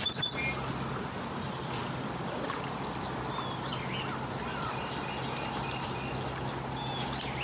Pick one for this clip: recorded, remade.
recorded